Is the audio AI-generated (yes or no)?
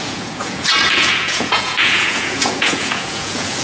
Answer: yes